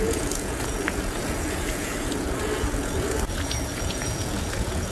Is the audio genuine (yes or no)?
no